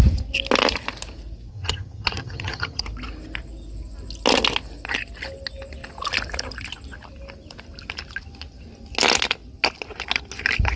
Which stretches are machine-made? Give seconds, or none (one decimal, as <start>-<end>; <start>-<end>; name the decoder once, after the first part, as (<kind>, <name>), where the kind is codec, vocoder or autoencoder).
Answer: 1.5-2.8 (vocoder, HiFi-GAN)